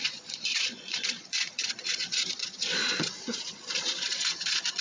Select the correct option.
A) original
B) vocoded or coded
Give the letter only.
B